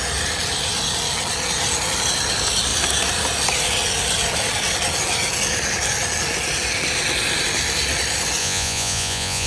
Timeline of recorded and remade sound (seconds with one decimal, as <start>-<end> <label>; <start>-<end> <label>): 0.0-8.4 recorded; 8.4-9.5 remade